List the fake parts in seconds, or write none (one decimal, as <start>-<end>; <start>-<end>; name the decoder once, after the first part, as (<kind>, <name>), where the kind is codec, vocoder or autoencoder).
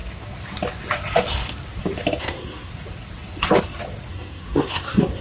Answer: 2.2-2.7 (codec, SNAC); 4.1-5.2